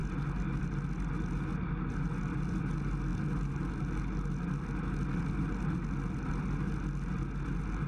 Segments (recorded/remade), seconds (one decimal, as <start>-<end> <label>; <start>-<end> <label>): 0.0-7.9 recorded

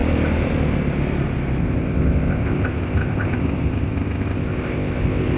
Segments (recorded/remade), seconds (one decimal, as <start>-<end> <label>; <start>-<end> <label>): 0.0-1.6 recorded; 1.6-5.4 remade

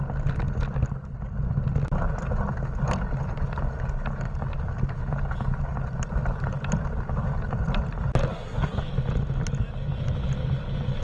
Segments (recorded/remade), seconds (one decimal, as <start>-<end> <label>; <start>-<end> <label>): 0.0-8.3 recorded; 8.3-8.8 remade; 8.8-11.0 recorded

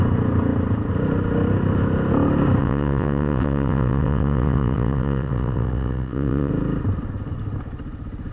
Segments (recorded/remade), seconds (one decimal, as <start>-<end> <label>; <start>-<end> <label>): 0.0-2.6 recorded; 2.6-6.5 remade; 6.5-8.3 recorded

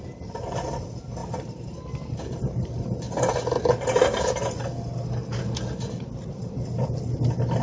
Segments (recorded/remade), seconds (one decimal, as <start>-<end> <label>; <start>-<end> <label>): 0.0-7.6 recorded

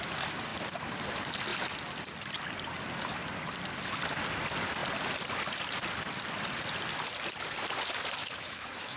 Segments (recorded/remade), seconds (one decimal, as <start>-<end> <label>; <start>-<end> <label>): 0.0-8.2 recorded; 8.2-9.0 remade